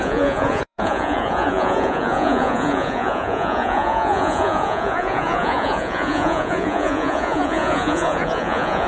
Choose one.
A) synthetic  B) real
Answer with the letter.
A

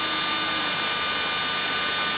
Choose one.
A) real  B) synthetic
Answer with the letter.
A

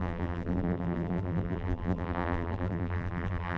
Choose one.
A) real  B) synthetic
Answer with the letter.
B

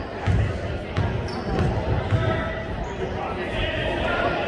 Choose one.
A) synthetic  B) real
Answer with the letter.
B